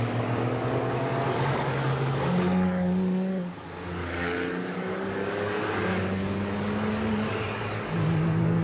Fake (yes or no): yes